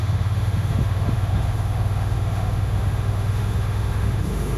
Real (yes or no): no